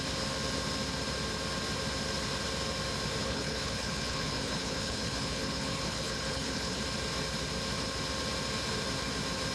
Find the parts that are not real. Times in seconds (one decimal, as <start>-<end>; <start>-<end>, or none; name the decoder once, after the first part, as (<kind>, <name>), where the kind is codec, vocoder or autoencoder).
3.2-6.8 (codec, HILCodec)